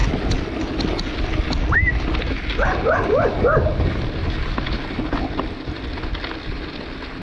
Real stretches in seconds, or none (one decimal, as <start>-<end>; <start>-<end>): 0.0-7.2